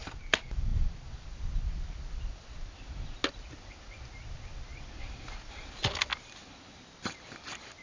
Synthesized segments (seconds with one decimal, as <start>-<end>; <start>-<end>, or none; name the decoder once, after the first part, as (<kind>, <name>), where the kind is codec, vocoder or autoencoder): none